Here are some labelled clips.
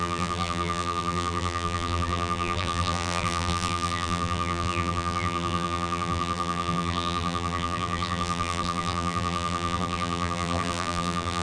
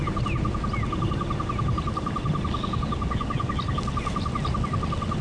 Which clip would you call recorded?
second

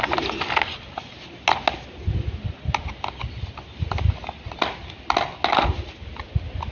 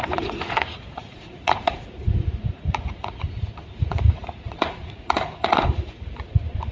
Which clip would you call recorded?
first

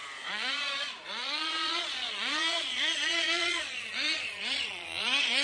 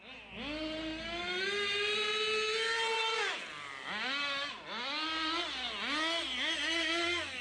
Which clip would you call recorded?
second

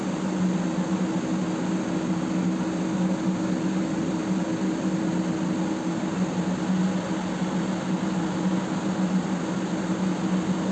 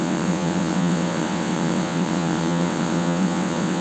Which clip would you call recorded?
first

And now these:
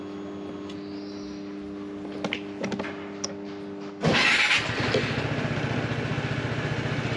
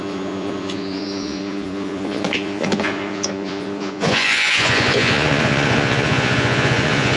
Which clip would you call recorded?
first